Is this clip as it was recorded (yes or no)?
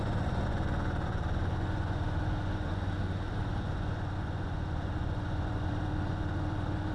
no